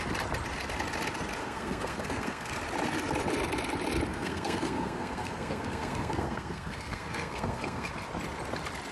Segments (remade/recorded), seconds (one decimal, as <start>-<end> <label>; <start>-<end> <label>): 0.0-1.4 recorded; 1.4-2.5 remade; 2.5-4.1 recorded; 4.1-7.9 remade; 7.9-8.9 recorded

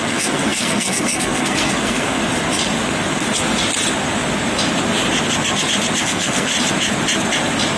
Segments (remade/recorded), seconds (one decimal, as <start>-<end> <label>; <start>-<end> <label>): 0.0-2.2 remade; 2.2-6.0 recorded; 6.0-6.5 remade; 6.5-7.8 recorded

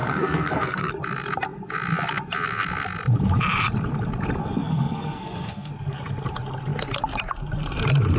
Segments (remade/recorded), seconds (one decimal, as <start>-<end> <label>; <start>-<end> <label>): 0.0-0.9 remade; 0.9-4.4 recorded; 4.4-5.7 remade; 5.7-8.2 recorded

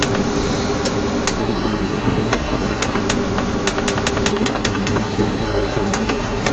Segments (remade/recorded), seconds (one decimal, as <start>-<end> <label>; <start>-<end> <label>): 0.0-1.4 recorded; 1.4-3.0 remade; 3.0-4.3 recorded; 4.3-6.5 remade

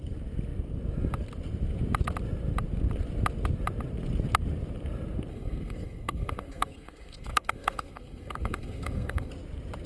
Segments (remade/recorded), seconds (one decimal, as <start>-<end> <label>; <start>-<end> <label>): 0.0-5.3 recorded; 5.3-9.3 remade; 9.3-9.9 recorded

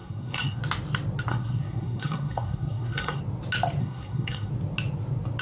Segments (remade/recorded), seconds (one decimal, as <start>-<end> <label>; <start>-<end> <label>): 0.0-0.6 remade; 0.6-1.3 recorded; 1.3-3.2 remade; 3.2-3.8 recorded; 3.8-4.5 remade; 4.5-5.4 recorded

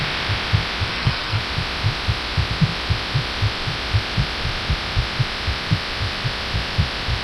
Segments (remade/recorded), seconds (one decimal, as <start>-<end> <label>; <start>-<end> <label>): 0.0-0.9 recorded; 0.9-1.4 remade; 1.4-7.2 recorded

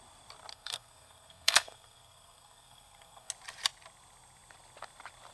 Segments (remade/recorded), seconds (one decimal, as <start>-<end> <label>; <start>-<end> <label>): 0.0-0.5 recorded; 0.5-3.3 remade; 3.3-5.3 recorded